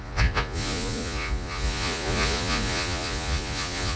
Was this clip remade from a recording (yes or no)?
yes